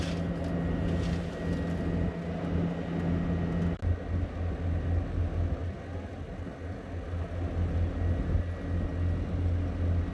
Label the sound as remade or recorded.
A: recorded